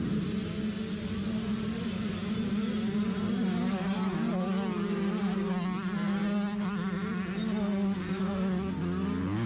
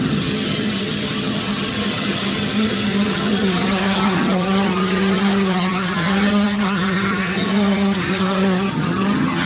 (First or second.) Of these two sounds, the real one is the first